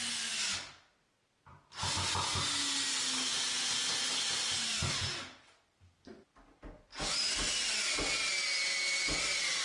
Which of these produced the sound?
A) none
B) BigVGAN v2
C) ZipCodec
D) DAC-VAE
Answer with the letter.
A